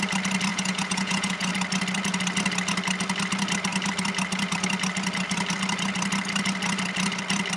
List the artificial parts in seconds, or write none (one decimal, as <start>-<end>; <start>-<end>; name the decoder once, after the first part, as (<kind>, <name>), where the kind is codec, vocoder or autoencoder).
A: 0.5-1.5 (vocoder, Vocos)

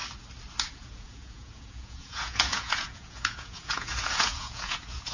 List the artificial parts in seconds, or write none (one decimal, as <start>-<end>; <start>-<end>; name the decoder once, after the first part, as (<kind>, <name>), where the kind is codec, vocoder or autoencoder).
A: 0.7-5.1 (vocoder, Vocos)

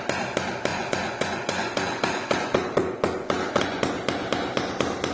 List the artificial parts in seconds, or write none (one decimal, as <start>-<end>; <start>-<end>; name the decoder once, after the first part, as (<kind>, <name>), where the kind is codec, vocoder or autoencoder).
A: 0.7-3.8 (vocoder, Vocos)

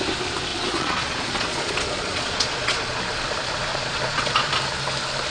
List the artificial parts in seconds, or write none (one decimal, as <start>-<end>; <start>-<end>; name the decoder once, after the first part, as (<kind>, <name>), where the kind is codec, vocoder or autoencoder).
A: 0.5-3.0 (vocoder, Vocos); 3.7-4.5